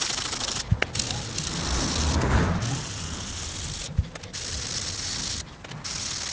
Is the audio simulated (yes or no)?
no